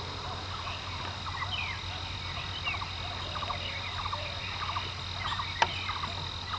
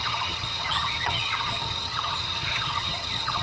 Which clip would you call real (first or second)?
first